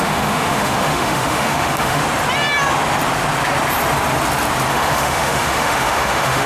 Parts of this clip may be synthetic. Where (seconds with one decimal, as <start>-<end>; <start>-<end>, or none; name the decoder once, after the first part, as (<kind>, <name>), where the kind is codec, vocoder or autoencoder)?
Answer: 0.0-2.0 (autoencoder, DAC-VAE); 4.7-6.5